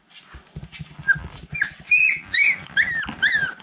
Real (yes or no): yes